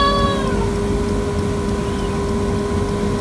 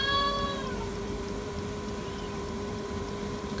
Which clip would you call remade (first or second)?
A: second